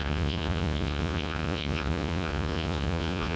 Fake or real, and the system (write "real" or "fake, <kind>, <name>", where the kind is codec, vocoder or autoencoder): fake, vocoder, Vocos